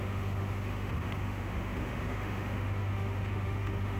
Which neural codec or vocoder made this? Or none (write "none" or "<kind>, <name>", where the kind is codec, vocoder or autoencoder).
autoencoder, DAC-VAE